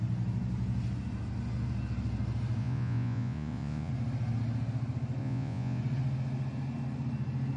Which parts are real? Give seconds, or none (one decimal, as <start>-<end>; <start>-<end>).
0.0-2.6; 3.9-5.2; 5.8-7.6